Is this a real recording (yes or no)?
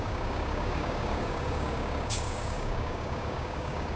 no